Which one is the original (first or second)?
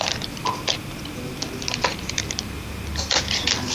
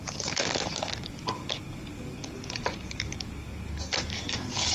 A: first